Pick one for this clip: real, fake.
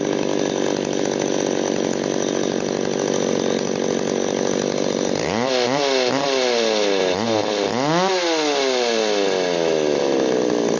real